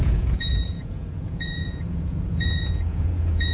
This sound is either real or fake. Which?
fake